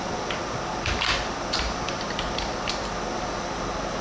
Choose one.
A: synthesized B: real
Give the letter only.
B